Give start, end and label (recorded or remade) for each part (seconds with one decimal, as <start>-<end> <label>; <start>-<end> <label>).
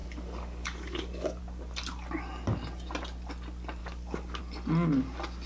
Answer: 0.0-1.4 remade; 1.4-3.8 recorded; 3.8-4.4 remade; 4.4-5.5 recorded